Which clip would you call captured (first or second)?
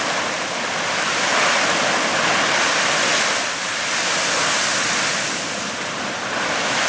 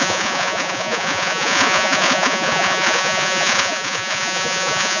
first